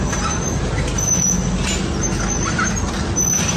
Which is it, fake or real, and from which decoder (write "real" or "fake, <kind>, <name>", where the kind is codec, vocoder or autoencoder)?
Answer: real